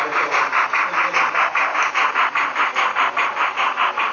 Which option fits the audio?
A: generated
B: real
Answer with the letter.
B